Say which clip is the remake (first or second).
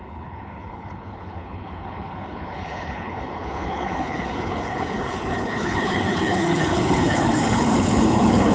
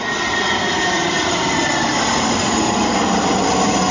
first